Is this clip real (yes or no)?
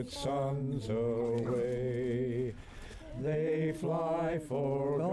yes